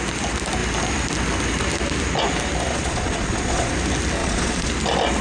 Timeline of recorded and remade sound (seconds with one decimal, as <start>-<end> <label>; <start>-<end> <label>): 0.0-2.7 recorded; 2.7-3.7 remade; 3.7-4.2 recorded; 4.2-4.7 remade; 4.7-5.2 recorded